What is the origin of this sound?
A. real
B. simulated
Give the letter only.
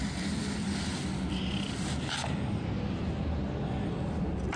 A